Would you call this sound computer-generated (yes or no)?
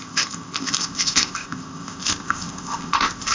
yes